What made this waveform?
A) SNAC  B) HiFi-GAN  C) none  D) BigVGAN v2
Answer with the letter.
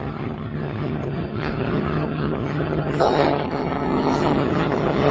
B